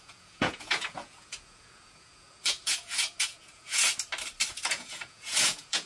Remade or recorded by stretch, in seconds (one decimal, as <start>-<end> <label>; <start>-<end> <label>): 0.0-3.8 remade; 3.8-4.5 recorded; 4.5-5.9 remade